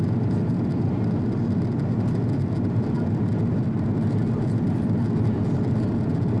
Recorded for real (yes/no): yes